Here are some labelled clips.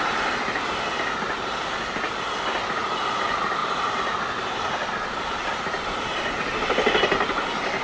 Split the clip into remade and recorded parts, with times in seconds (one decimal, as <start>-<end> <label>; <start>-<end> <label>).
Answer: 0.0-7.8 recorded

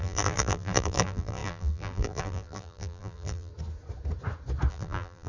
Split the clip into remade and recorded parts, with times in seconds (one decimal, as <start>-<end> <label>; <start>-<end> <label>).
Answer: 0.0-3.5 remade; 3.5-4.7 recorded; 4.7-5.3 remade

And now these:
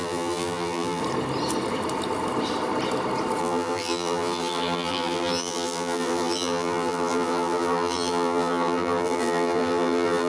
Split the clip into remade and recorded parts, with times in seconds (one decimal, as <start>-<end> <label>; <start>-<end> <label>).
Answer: 0.0-1.0 remade; 1.0-3.4 recorded; 3.4-10.3 remade

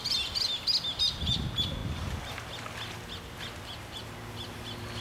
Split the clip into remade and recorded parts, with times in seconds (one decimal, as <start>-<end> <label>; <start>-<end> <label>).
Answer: 0.0-5.0 recorded

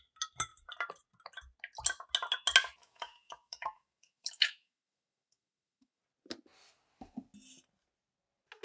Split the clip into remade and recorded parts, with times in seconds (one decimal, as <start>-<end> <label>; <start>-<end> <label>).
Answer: 0.0-2.8 recorded; 2.8-6.0 remade; 6.0-8.6 recorded